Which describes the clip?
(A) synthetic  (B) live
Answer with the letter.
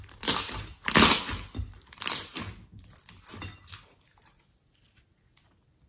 B